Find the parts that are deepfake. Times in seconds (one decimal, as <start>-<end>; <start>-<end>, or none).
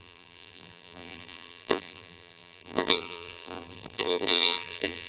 0.0-5.1